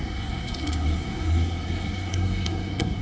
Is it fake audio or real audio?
fake